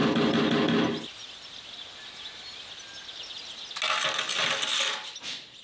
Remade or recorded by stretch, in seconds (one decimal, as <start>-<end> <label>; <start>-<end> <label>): 0.0-5.6 recorded